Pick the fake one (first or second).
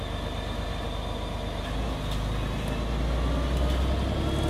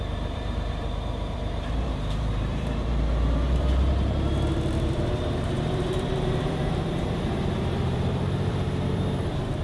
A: second